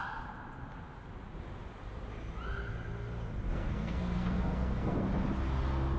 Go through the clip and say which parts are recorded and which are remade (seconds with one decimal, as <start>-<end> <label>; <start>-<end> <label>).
0.0-3.5 recorded; 3.5-5.1 remade; 5.1-6.0 recorded